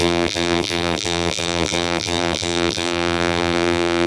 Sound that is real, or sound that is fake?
fake